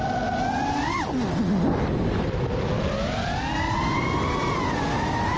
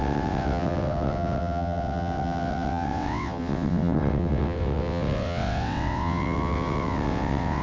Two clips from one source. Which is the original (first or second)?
first